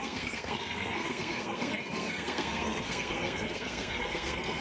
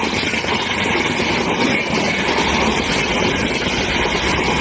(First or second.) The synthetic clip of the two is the first